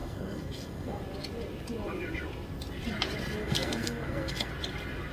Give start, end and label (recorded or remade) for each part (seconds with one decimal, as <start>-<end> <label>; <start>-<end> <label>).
0.0-1.0 remade; 1.0-3.4 recorded; 3.4-4.5 remade; 4.5-5.1 recorded